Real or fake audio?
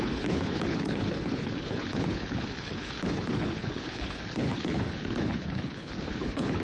fake